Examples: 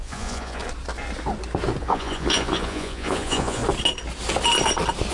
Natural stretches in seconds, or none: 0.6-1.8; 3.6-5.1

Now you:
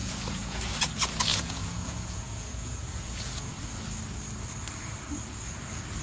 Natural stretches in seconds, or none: 0.6-1.3; 3.5-6.0

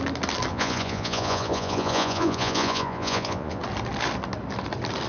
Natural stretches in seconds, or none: 0.0-0.5; 3.6-5.1

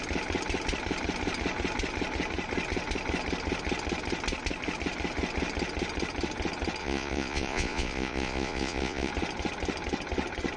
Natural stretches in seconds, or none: 0.0-6.8; 9.1-10.6